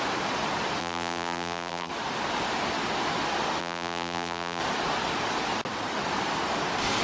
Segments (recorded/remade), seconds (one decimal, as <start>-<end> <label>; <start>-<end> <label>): 0.0-0.8 recorded; 0.8-1.9 remade; 1.9-3.6 recorded; 3.6-4.6 remade; 4.6-7.0 recorded